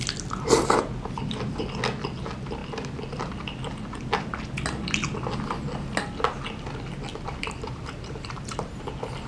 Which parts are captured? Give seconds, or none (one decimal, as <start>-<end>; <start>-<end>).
0.0-7.1; 8.8-9.3